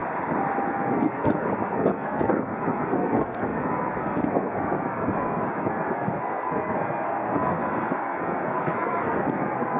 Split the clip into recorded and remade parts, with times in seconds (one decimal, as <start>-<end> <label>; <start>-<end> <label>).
0.0-0.7 recorded; 0.7-9.8 remade